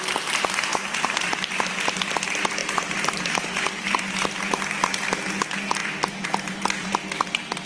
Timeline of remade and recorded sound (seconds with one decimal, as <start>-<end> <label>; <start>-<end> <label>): 0.0-0.7 recorded; 0.7-1.5 remade; 1.5-2.6 recorded; 2.6-4.3 remade; 4.3-5.8 recorded; 5.8-7.1 remade; 7.1-7.7 recorded